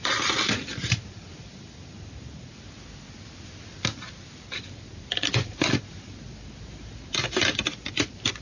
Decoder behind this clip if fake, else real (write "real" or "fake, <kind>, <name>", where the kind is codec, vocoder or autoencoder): real